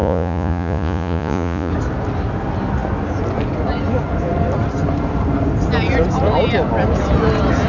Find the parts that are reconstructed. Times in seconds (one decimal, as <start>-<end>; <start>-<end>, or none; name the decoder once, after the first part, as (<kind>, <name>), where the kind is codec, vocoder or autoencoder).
0.0-1.7 (vocoder, Vocos)